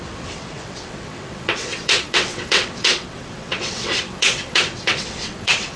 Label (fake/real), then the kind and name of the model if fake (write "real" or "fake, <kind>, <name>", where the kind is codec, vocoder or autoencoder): fake, vocoder, WaveNeXt